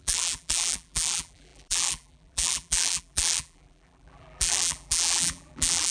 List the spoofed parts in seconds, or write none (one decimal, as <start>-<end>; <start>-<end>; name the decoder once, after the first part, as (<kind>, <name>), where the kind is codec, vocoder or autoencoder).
0.0-5.9 (vocoder, BigVGAN v2)